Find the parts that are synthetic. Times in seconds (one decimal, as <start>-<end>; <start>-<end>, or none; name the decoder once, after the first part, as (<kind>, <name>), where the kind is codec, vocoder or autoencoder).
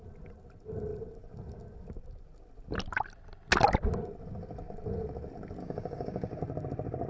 5.6-6.4 (codec, DAC)